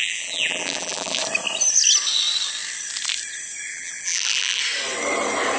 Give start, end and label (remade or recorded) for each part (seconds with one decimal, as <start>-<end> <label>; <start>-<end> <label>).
0.0-1.2 remade; 1.2-3.7 recorded; 3.7-4.6 remade; 4.6-5.6 recorded

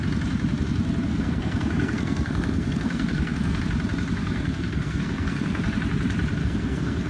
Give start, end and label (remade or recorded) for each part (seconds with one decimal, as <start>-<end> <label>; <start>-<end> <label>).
0.0-1.1 recorded; 1.1-3.6 remade; 3.6-4.2 recorded; 4.2-5.6 remade; 5.6-6.4 recorded; 6.4-7.1 remade

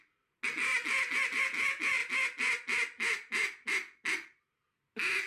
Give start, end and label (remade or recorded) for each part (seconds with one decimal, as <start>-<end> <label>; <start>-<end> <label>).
0.0-5.3 recorded

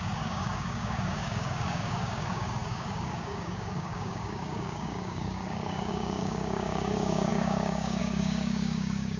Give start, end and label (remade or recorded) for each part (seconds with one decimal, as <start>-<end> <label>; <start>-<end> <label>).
0.0-9.2 remade

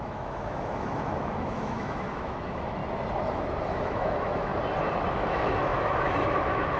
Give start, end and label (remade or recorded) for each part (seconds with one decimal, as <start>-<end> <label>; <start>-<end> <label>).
0.0-2.8 remade; 2.8-3.7 recorded; 3.7-4.5 remade; 4.5-5.1 recorded; 5.1-6.8 remade

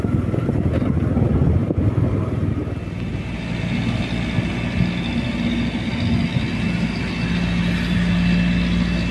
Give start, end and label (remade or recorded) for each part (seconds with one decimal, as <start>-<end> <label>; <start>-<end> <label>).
0.0-9.1 recorded

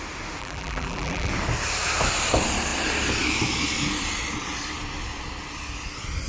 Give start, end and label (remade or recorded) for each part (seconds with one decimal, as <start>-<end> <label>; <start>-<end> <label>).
0.0-0.4 recorded; 0.4-1.3 remade; 1.3-6.3 recorded

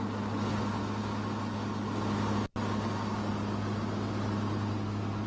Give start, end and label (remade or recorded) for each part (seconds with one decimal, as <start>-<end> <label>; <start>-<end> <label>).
0.0-5.3 recorded